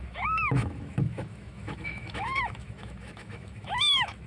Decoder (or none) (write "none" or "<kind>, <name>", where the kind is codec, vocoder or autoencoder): autoencoder, DAC-VAE